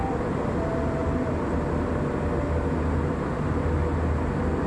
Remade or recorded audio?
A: recorded